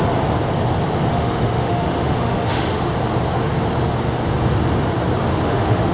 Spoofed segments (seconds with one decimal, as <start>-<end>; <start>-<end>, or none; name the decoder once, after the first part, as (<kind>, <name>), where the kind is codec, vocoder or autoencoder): 1.1-2.9 (autoencoder, DAC-VAE); 5.3-5.9